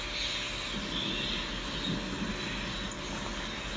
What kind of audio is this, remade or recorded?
recorded